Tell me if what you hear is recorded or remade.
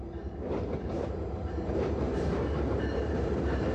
remade